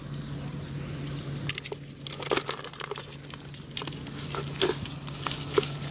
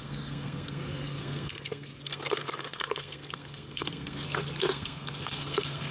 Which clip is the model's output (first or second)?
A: second